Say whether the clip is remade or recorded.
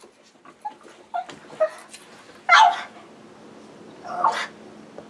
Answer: recorded